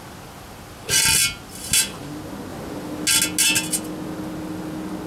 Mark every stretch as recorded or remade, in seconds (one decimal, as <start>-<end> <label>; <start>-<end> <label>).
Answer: 0.0-5.1 recorded